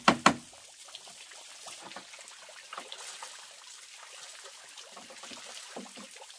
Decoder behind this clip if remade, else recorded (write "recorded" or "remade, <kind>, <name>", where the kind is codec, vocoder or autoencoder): recorded